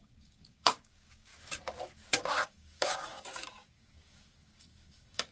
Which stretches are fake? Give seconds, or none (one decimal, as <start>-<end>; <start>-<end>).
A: 0.0-1.3; 2.2-5.3

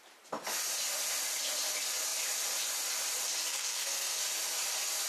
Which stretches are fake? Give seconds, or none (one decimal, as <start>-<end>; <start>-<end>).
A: 3.5-4.2

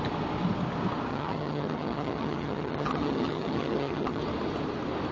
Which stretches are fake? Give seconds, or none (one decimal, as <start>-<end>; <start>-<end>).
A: 1.1-4.2